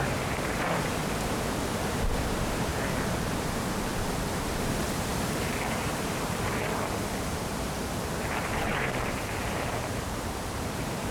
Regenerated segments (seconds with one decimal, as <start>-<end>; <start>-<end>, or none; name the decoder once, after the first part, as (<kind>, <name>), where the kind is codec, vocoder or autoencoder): 0.0-1.0 (vocoder, BigVGAN v2); 1.7-2.7; 4.6-11.1